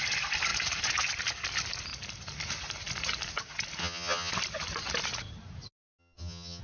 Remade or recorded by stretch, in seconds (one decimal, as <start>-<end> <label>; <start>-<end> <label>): 0.0-3.8 recorded; 3.8-4.3 remade; 4.3-6.0 recorded; 6.0-6.6 remade